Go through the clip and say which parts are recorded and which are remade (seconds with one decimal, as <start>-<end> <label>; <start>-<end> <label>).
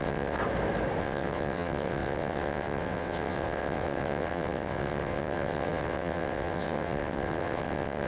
0.0-0.4 remade; 0.4-1.0 recorded; 1.0-8.1 remade